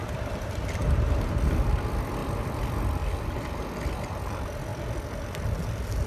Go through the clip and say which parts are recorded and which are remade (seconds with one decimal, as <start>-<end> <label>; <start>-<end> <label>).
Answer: 0.0-2.2 recorded; 2.2-3.5 remade; 3.5-4.7 recorded; 4.7-5.3 remade; 5.3-6.1 recorded